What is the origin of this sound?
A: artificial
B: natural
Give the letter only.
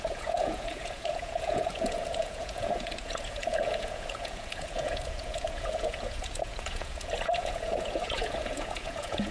A